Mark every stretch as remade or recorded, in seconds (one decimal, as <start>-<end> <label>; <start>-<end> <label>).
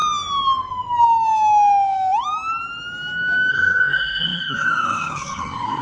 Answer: 0.0-3.5 recorded; 3.5-5.8 remade